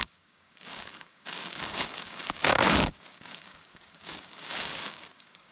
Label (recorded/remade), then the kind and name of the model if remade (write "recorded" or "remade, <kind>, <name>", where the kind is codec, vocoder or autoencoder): remade, codec, DAC